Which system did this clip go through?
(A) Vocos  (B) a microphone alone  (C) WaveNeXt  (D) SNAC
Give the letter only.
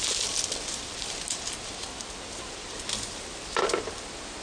B